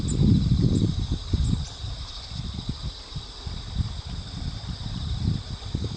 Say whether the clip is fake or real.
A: real